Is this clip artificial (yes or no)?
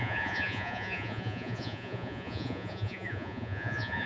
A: yes